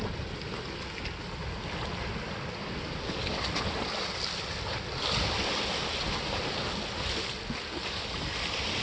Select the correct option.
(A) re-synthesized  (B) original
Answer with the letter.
B